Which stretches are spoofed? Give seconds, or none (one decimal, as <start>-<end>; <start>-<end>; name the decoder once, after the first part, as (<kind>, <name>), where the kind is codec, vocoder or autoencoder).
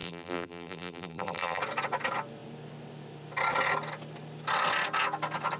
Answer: 0.0-1.6 (vocoder, BigVGAN v2)